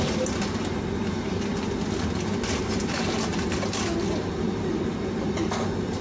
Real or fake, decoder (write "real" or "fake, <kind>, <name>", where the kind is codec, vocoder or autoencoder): real